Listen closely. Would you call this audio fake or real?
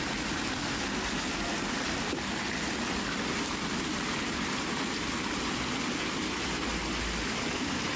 real